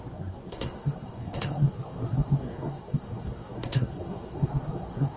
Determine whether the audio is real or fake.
fake